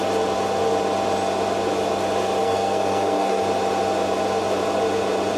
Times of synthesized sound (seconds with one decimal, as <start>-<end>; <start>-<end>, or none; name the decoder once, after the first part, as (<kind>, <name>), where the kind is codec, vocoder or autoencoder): 2.4-3.4 (codec, SNAC)